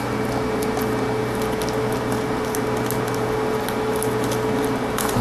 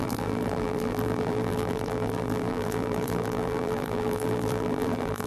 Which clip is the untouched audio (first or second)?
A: first